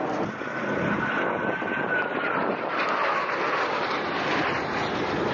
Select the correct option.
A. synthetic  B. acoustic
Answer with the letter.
B